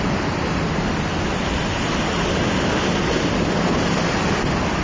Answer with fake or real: real